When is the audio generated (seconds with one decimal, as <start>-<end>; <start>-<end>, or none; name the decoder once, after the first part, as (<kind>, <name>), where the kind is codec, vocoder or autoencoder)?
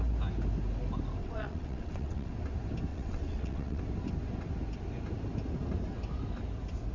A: 1.2-2.3 (vocoder, WaveNeXt); 2.9-3.8